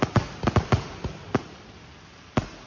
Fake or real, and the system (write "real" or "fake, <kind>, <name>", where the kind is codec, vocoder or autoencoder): real